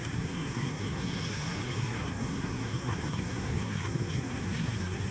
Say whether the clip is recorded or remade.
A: remade